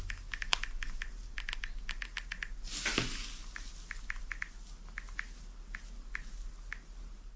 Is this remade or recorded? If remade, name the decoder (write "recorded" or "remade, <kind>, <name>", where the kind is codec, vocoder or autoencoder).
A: recorded